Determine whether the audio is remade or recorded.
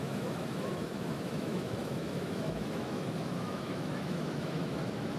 remade